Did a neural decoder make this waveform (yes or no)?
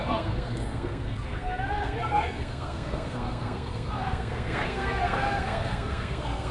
yes